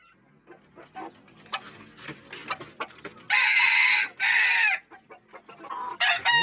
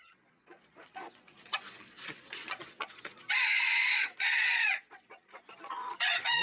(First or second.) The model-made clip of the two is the second